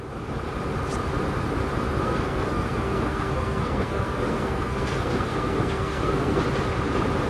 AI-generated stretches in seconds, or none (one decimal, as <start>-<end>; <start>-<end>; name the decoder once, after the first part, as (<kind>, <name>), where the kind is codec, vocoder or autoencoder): 2.0-6.4 (codec, SNAC)